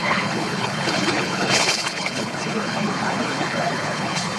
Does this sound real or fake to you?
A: fake